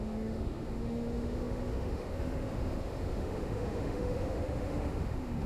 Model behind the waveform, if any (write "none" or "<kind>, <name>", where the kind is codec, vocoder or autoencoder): autoencoder, DAC-VAE